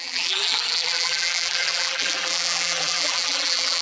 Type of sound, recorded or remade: remade